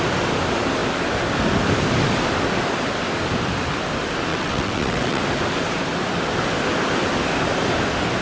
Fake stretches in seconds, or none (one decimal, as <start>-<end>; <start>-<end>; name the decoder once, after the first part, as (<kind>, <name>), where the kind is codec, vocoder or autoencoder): 4.3-5.2 (vocoder, WaveNeXt)